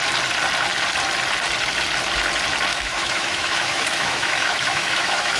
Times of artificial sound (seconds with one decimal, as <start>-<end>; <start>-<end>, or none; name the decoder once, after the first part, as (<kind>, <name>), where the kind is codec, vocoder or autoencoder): 2.7-5.4 (autoencoder, DAC-VAE)